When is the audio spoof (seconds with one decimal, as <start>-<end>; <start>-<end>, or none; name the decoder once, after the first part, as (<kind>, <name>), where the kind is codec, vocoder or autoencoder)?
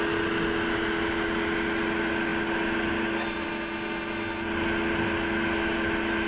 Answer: none